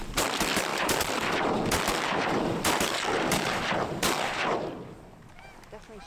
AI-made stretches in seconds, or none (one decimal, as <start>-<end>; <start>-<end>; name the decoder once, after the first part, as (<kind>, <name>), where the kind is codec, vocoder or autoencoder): none